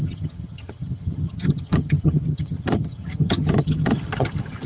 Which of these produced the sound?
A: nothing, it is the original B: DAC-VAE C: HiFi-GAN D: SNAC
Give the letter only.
C